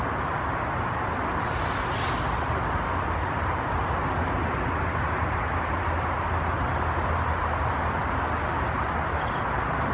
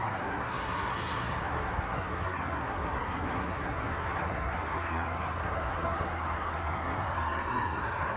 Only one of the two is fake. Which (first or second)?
second